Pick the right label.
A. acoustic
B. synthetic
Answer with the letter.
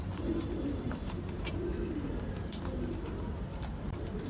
B